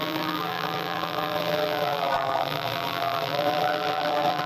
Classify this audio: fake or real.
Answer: fake